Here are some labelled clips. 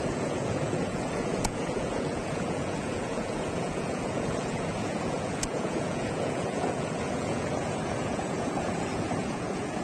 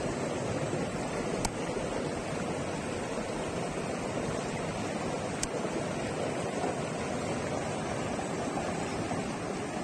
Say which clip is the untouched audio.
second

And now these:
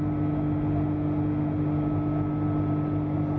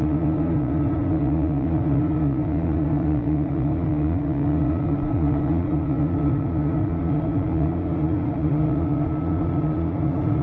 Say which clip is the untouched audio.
first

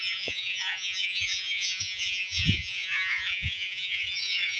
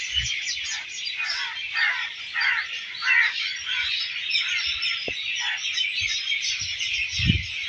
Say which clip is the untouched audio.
second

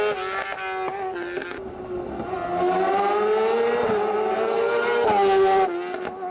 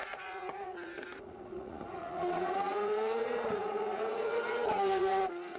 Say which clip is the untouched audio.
first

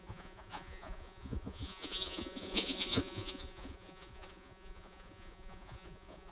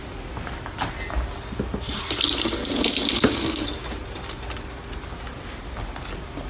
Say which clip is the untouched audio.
second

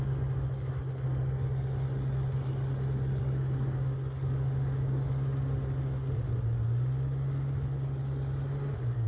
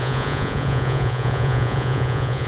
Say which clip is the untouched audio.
first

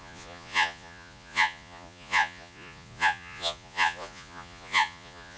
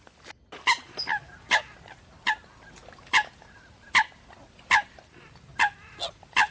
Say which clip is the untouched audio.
second